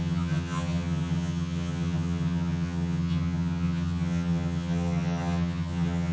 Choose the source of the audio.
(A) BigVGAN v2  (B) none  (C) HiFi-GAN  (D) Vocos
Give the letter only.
C